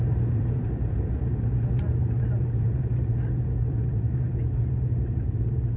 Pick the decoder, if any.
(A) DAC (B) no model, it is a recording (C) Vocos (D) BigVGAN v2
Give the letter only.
D